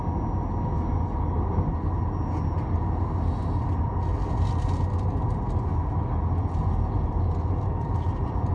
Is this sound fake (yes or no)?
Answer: no